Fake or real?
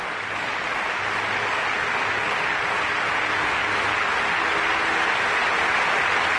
real